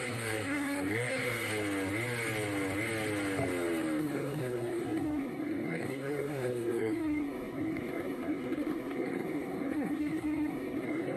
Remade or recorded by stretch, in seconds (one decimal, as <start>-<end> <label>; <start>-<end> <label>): 0.0-1.5 remade; 1.5-4.0 recorded; 4.0-11.2 remade

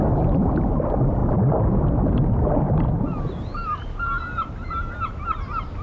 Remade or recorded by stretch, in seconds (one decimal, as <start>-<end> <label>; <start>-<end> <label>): 0.0-5.8 recorded

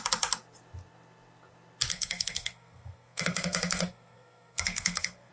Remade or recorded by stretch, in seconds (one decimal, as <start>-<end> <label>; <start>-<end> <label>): 0.0-1.9 recorded; 1.9-5.3 remade